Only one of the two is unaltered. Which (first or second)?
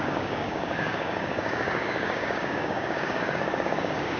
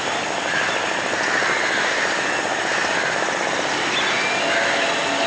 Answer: second